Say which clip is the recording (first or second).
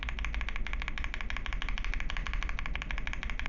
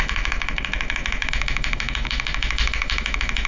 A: first